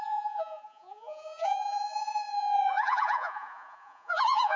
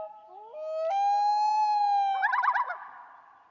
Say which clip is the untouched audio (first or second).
second